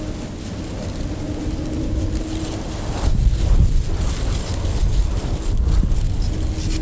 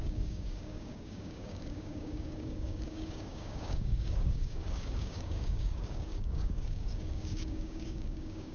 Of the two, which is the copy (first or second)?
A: second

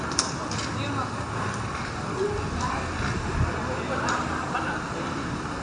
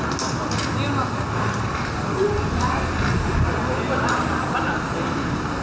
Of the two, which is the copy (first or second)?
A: first